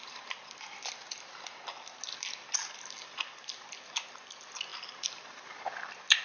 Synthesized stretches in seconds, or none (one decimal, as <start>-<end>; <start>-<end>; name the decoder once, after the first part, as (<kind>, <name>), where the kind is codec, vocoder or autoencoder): none